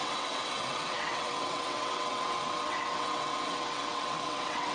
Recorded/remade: remade